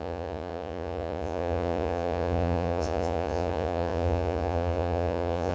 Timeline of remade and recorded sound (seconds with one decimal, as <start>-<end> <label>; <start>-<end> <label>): 0.0-5.5 remade